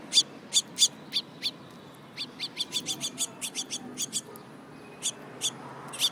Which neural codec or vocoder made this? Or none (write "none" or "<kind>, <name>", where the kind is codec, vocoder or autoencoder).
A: none